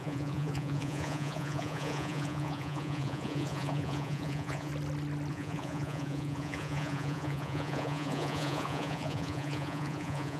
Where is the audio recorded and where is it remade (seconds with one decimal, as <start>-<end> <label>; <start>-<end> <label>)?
0.0-4.7 remade; 4.7-5.3 recorded; 5.3-10.4 remade